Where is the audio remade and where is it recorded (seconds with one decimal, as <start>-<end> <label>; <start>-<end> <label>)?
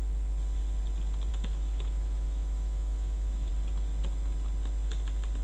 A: 0.0-1.3 recorded; 1.3-3.5 remade; 3.5-5.4 recorded